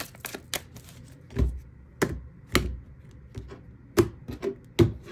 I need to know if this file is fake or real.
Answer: real